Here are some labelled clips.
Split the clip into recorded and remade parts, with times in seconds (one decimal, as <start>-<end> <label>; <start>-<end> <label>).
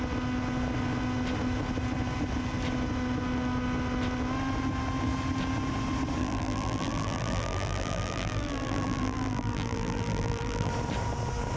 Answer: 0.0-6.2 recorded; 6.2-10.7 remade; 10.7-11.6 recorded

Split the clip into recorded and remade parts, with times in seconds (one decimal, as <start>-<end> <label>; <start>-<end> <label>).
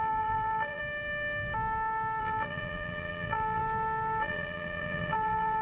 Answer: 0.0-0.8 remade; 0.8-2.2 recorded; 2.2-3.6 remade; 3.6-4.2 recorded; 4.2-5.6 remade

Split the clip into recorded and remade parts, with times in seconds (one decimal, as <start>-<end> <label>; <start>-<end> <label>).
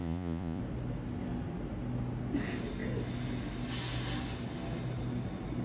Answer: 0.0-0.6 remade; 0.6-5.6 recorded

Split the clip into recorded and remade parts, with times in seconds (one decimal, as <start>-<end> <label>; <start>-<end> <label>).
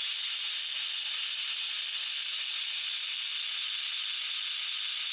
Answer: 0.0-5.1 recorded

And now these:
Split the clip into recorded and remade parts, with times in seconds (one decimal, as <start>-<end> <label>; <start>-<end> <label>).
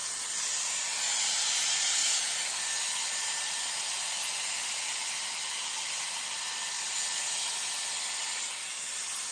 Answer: 0.0-1.0 remade; 1.0-9.3 recorded